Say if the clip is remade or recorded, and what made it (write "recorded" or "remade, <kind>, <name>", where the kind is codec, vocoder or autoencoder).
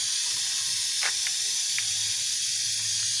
recorded